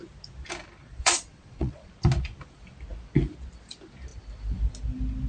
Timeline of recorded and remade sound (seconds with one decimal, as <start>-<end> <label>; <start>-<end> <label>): 0.0-0.8 recorded; 0.8-1.9 remade; 1.9-5.3 recorded